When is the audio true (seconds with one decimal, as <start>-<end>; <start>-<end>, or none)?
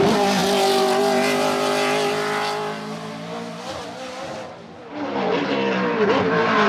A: 0.0-6.7